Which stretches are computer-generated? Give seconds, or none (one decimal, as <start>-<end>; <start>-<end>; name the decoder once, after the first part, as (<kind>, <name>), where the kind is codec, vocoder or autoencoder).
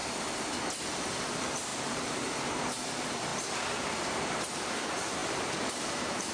0.8-3.3 (vocoder, BigVGAN v2); 4.2-6.3